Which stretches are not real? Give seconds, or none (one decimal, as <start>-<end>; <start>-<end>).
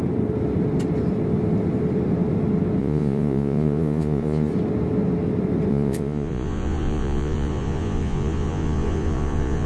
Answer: 2.8-4.5; 5.7-9.7